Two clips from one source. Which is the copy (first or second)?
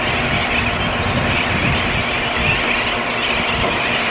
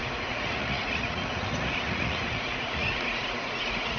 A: second